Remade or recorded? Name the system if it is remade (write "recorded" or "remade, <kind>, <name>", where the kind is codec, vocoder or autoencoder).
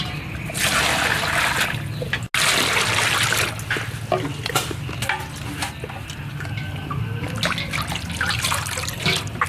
recorded